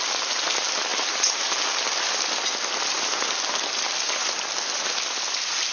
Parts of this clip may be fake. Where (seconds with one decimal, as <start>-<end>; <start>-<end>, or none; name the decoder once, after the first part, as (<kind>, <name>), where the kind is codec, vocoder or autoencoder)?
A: none